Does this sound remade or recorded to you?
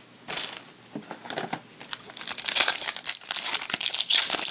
recorded